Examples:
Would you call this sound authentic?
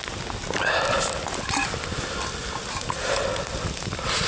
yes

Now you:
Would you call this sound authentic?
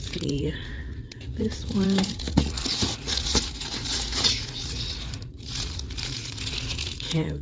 no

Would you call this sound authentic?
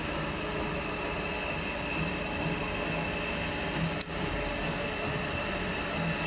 yes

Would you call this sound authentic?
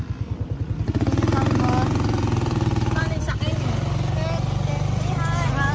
yes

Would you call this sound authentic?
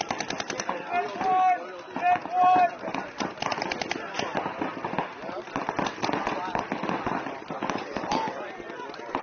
yes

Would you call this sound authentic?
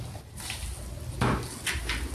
yes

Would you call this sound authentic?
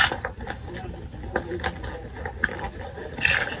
yes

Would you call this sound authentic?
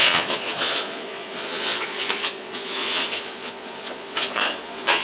no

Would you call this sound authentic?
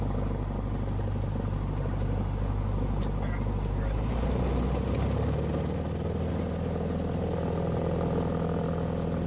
yes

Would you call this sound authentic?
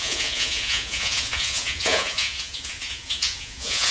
no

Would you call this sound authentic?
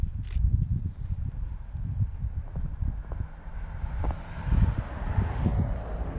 yes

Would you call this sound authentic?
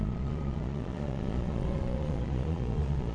no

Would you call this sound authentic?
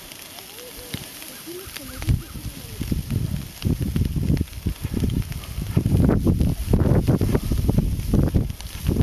yes